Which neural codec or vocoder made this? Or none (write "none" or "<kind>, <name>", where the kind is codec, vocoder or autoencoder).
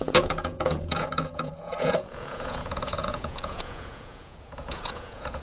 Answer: vocoder, Vocos